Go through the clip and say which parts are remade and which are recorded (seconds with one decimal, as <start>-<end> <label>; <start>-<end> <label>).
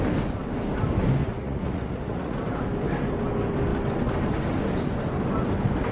0.0-1.2 recorded; 1.2-2.4 remade; 2.4-5.9 recorded